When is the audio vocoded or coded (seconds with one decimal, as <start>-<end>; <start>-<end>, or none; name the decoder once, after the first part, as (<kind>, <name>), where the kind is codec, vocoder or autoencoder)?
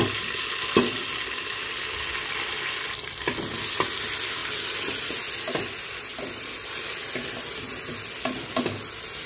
none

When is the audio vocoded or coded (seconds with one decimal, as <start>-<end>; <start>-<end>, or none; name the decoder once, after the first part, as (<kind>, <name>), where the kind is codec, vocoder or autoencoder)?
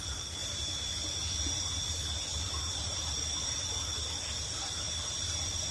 2.3-5.7 (vocoder, BigVGAN v2)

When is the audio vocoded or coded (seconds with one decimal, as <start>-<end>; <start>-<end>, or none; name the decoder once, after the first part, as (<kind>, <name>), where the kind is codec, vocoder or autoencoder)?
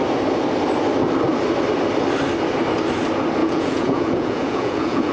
3.4-5.1 (vocoder, Vocos)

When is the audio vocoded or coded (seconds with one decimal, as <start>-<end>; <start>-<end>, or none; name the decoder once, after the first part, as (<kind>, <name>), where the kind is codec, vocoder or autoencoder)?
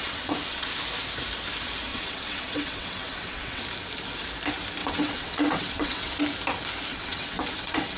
0.0-0.7 (vocoder, WaveNeXt); 1.9-3.6; 4.8-6.2; 6.9-8.0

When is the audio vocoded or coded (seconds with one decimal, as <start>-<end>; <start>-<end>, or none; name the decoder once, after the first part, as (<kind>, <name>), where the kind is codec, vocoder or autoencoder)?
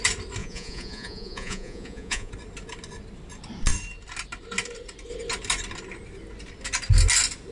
0.4-2.3 (vocoder, Vocos)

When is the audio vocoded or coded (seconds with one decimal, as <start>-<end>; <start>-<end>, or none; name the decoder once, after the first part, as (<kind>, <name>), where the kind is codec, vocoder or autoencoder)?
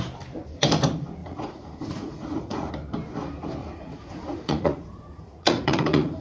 1.2-2.7 (vocoder, Vocos); 3.6-6.2